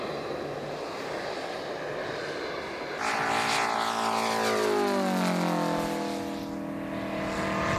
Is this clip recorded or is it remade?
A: recorded